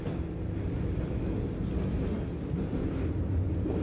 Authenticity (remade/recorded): recorded